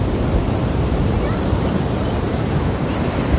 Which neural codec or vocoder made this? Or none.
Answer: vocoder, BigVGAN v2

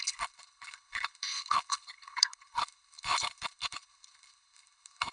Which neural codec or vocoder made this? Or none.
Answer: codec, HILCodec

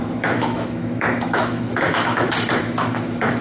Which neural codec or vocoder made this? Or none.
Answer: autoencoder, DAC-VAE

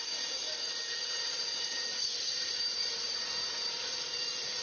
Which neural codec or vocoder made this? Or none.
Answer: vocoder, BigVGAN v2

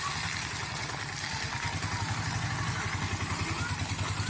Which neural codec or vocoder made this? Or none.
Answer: none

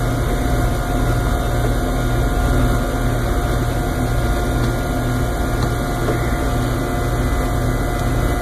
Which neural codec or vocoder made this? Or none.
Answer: none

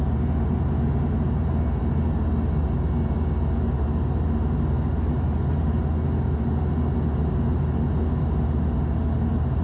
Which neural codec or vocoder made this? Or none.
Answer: none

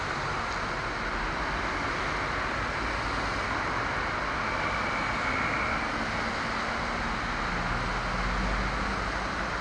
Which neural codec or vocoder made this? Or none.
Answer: none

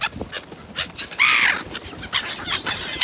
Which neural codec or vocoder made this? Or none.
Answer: none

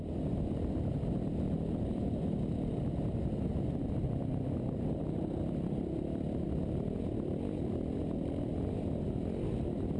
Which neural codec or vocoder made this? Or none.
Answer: none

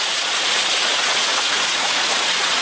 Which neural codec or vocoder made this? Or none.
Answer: vocoder, Vocos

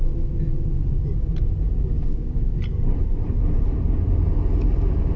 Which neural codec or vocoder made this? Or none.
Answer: none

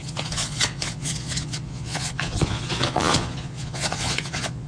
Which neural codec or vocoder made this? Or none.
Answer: vocoder, Vocos